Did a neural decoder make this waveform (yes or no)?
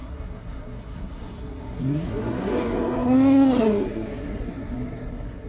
yes